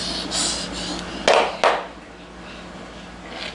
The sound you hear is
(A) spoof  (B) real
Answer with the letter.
B